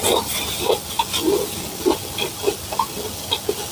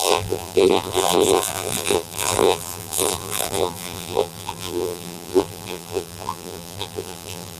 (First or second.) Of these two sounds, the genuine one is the first